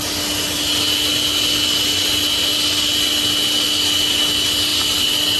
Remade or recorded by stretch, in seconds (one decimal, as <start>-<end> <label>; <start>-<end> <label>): 0.0-5.4 recorded